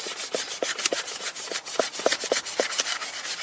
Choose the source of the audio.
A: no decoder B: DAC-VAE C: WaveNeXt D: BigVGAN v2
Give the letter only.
A